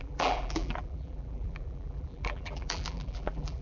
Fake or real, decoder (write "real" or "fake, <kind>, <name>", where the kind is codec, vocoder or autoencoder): fake, vocoder, BigVGAN v2